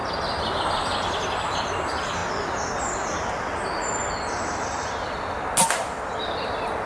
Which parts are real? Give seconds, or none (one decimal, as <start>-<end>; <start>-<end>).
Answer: 0.0-0.5; 2.2-6.2